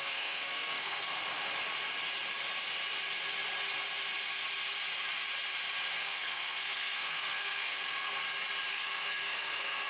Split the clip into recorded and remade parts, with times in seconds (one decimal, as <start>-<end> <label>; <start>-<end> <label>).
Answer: 0.0-1.1 remade; 1.1-6.0 recorded; 6.0-8.2 remade; 8.2-8.7 recorded; 8.7-9.9 remade